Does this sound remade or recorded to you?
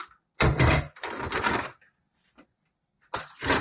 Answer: recorded